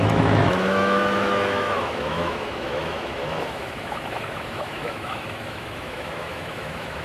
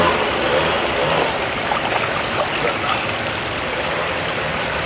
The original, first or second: second